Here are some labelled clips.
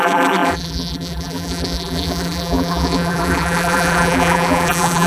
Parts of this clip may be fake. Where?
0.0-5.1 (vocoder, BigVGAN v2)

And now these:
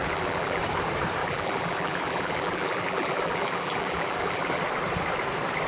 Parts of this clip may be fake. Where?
0.0-0.6 (vocoder, BigVGAN v2); 1.2-4.6

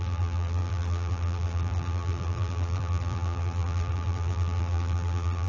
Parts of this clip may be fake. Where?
0.0-5.5 (vocoder, BigVGAN v2)

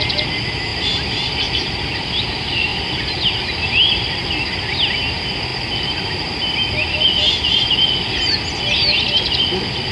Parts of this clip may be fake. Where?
0.7-2.3 (vocoder, BigVGAN v2); 2.7-3.3

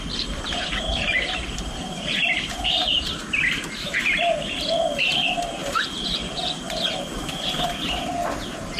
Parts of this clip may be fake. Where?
0.0-3.2 (vocoder, BigVGAN v2); 3.8-5.6

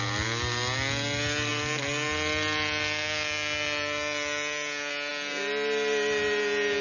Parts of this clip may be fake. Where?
none

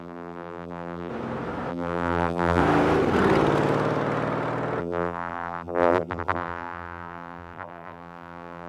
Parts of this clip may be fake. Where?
0.0-1.1 (vocoder, BigVGAN v2); 1.7-2.6; 4.8-8.7

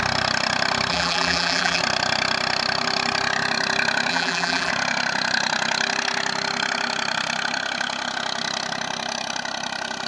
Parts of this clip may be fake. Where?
0.9-1.8 (vocoder, BigVGAN v2); 4.1-4.7